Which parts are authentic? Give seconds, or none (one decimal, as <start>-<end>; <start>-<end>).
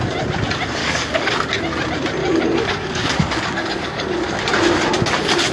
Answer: 0.0-0.8; 1.3-2.2; 4.4-5.5